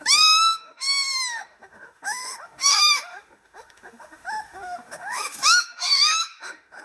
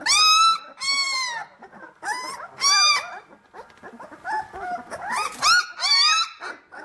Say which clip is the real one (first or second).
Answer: second